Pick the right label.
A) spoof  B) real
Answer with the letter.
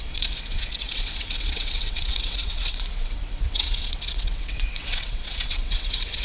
A